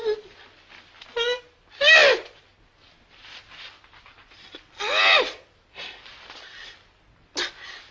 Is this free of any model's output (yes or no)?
yes